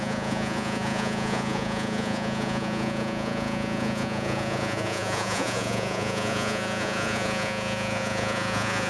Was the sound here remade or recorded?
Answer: remade